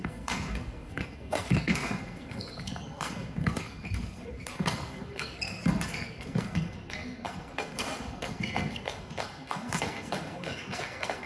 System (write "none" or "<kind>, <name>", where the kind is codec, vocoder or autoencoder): codec, SNAC